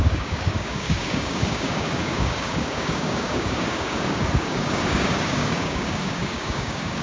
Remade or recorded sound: remade